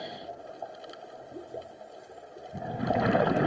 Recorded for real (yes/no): yes